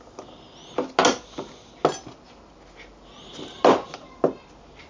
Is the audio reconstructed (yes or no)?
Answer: no